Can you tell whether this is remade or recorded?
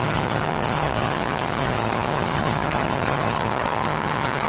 remade